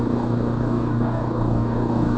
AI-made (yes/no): yes